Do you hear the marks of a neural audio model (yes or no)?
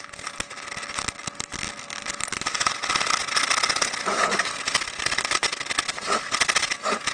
no